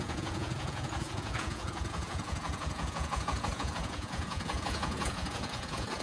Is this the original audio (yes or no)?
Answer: no